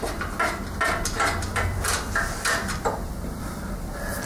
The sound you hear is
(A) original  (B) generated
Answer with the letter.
B